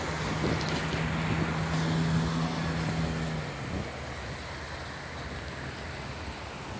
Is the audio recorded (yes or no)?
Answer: yes